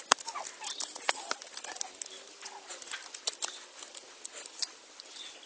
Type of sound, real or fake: real